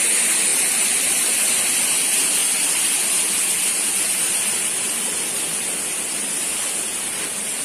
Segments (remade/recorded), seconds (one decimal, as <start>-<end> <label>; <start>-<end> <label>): 0.0-0.5 recorded; 0.5-1.1 remade; 1.1-7.6 recorded